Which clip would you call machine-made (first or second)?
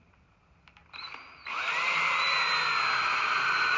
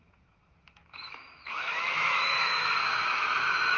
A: second